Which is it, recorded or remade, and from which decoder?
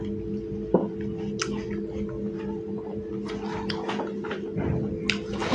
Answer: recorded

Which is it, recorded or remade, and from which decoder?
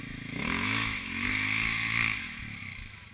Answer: remade, autoencoder, DAC-VAE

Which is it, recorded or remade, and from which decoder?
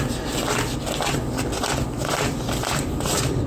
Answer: recorded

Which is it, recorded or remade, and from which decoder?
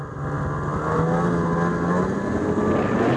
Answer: recorded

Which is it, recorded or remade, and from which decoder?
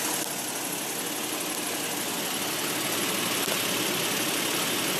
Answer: recorded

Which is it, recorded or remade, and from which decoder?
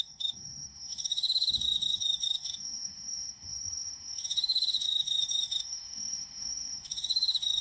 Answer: remade, autoencoder, DAC-VAE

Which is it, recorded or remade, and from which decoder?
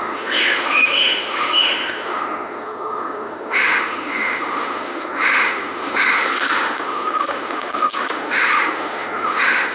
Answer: remade, autoencoder, DAC-VAE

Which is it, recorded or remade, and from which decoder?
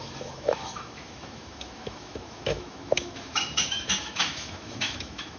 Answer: remade, autoencoder, DAC-VAE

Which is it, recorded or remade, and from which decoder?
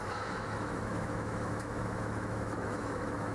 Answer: remade, autoencoder, DAC-VAE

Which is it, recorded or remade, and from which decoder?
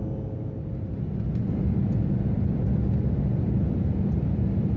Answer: recorded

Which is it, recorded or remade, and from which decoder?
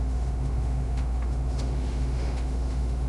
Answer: remade, autoencoder, DAC-VAE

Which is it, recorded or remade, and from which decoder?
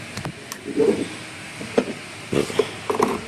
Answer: recorded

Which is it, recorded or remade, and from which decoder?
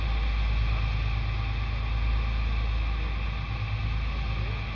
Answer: recorded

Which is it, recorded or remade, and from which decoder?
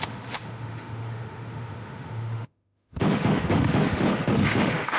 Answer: remade, autoencoder, DAC-VAE